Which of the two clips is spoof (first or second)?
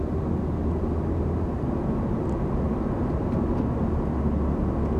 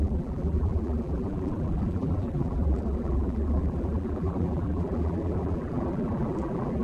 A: second